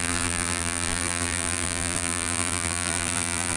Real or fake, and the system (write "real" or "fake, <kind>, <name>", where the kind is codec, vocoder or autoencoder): fake, vocoder, BigVGAN v2